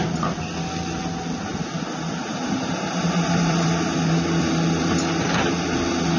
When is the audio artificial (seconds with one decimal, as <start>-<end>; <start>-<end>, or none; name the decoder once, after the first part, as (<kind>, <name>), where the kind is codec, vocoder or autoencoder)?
1.5-4.5 (vocoder, BigVGAN v2)